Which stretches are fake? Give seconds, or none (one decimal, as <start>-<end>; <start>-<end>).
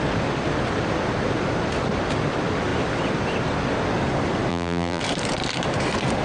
4.5-5.0